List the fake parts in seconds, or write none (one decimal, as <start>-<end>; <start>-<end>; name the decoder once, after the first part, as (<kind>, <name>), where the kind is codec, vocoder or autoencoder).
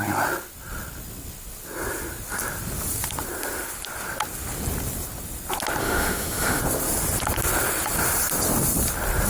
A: 5.8-6.6 (autoencoder, DAC-VAE)